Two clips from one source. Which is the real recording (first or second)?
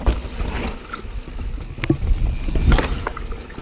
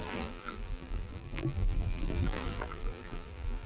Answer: first